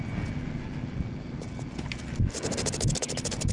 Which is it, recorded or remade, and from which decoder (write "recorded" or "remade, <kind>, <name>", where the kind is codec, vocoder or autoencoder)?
recorded